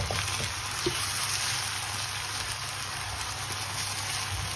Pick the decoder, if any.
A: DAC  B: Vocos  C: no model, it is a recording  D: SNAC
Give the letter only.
C